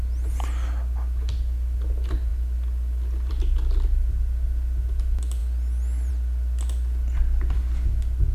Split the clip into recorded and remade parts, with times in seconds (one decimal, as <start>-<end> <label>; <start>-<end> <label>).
0.0-8.3 recorded